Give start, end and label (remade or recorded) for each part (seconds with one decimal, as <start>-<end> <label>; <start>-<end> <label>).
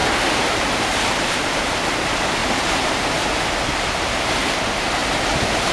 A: 0.0-1.7 remade; 1.7-2.4 recorded; 2.4-4.5 remade; 4.5-5.7 recorded